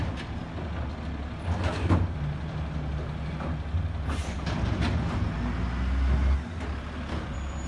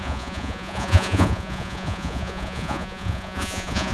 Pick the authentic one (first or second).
first